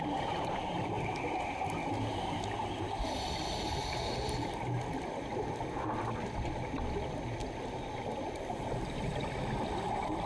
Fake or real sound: real